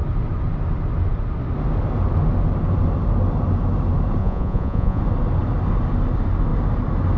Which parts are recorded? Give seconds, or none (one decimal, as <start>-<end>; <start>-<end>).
0.0-4.2; 5.0-7.2